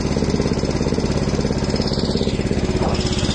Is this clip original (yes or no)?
yes